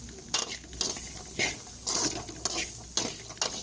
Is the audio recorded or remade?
recorded